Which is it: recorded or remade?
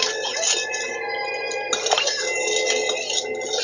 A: recorded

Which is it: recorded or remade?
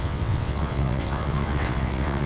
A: remade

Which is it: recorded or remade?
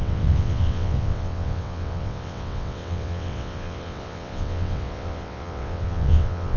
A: remade